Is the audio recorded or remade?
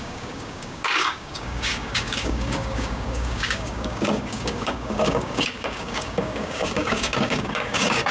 remade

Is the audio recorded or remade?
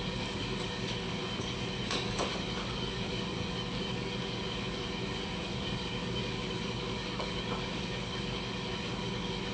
remade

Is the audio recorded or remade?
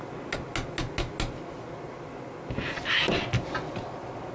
recorded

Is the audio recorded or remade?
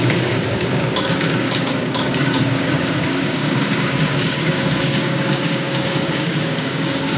remade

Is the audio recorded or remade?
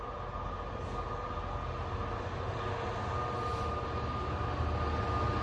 recorded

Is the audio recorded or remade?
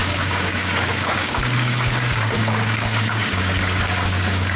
remade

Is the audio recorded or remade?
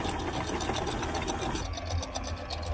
recorded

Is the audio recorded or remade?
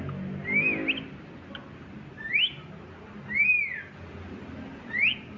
recorded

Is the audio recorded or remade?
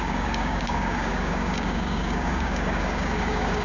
remade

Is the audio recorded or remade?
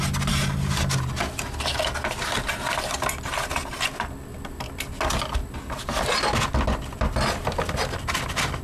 recorded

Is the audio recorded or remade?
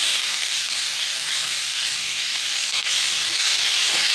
remade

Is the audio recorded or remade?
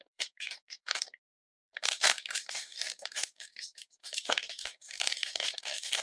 remade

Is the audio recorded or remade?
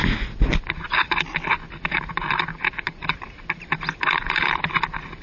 recorded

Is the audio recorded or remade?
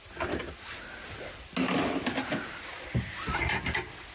recorded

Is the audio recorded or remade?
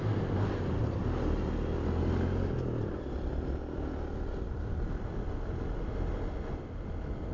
recorded